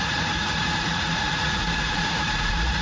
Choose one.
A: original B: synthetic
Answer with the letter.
B